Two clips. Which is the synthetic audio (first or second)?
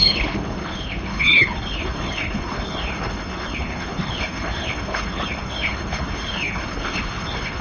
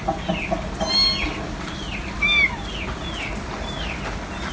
first